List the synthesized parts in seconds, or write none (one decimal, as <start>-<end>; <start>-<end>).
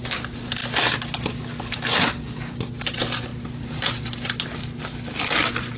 none